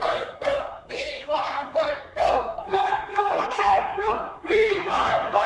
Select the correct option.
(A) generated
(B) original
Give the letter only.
A